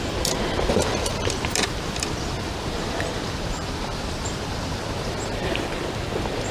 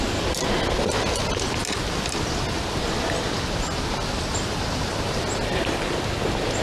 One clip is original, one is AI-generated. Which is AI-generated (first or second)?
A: first